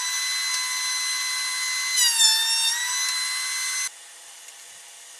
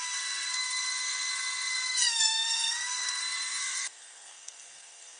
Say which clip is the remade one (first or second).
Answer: second